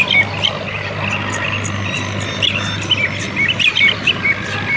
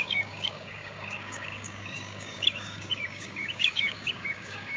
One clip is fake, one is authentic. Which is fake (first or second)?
second